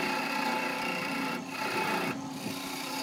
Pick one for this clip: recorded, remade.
remade